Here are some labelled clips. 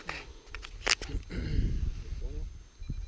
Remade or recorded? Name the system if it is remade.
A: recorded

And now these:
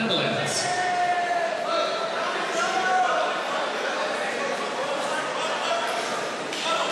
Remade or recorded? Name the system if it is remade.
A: recorded